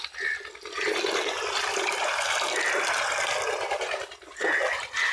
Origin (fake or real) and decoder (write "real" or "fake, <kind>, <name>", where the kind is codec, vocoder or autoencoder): real